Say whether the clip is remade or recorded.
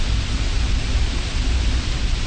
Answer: recorded